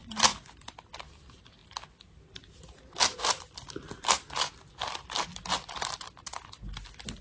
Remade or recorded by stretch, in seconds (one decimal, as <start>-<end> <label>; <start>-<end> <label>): 0.0-0.7 remade; 0.7-7.2 recorded